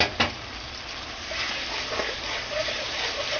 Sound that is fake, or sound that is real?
real